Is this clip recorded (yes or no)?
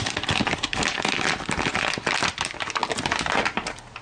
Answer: yes